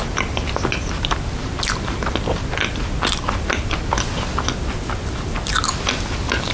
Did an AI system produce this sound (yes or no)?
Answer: no